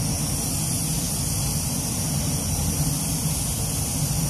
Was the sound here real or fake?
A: real